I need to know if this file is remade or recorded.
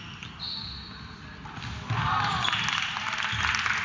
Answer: recorded